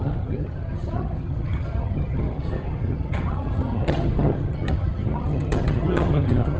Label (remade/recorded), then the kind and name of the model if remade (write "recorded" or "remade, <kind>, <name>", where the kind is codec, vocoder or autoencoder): remade, vocoder, HiFi-GAN